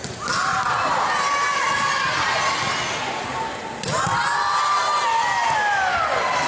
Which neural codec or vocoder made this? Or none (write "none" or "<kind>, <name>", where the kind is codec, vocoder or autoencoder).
none